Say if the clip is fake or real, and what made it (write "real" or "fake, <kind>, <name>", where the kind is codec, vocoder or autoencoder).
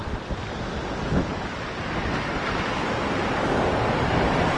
real